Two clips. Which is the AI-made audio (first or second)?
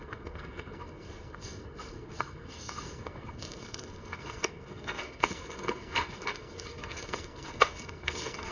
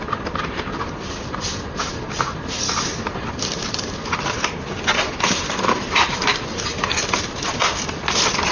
first